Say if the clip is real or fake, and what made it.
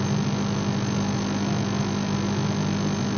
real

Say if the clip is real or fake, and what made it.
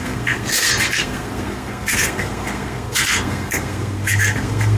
fake, codec, SNAC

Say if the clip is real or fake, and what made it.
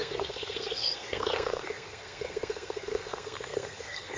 fake, codec, SNAC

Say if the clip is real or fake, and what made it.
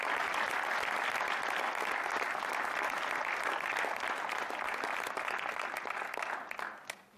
real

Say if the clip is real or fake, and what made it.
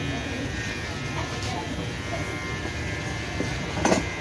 real